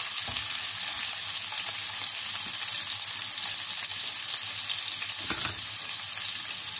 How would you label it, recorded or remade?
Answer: recorded